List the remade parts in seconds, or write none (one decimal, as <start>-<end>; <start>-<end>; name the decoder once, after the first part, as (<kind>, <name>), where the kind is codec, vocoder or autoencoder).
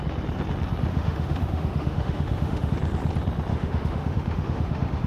0.9-2.7 (autoencoder, DAC-VAE); 3.5-5.1